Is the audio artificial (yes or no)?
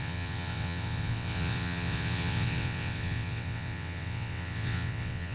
yes